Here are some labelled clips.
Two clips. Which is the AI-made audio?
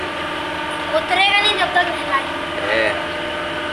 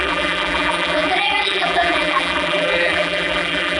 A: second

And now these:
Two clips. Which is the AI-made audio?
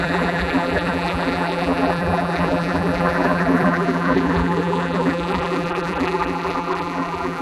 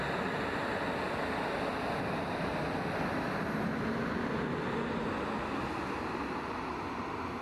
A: first